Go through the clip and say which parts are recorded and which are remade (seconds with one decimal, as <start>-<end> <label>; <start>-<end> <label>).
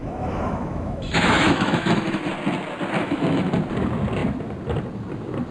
0.0-2.2 remade; 2.2-3.0 recorded; 3.0-3.5 remade; 3.5-5.5 recorded